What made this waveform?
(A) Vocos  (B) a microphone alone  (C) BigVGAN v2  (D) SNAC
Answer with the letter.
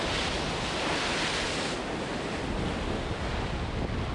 B